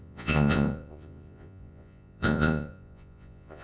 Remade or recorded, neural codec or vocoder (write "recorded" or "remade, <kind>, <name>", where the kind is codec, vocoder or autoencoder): remade, vocoder, Vocos